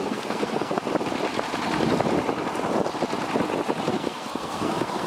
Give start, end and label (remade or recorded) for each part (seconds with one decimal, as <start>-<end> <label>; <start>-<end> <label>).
0.0-0.8 remade; 0.8-3.9 recorded; 3.9-5.1 remade